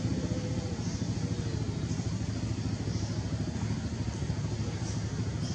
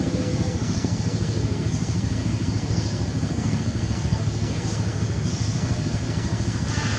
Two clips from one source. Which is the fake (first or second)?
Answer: second